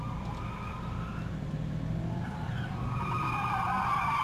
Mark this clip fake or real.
real